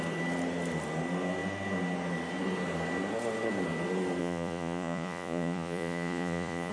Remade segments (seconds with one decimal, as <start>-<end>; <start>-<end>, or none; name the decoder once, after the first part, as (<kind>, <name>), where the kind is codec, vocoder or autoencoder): 4.2-6.7 (vocoder, Vocos)